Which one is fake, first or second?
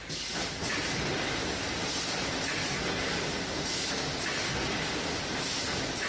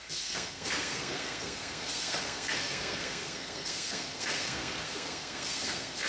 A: second